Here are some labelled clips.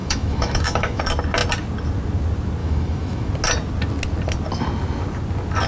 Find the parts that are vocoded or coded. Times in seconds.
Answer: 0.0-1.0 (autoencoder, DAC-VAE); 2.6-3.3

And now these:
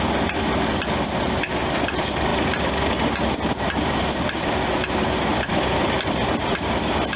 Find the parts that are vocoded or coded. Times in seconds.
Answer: 5.3-6.3 (vocoder, BigVGAN v2)

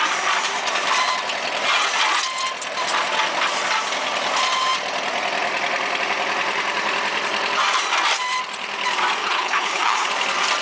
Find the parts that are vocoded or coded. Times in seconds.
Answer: 9.2-10.1 (codec, HILCodec)